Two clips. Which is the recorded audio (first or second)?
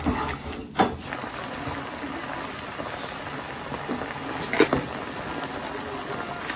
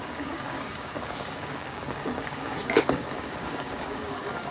first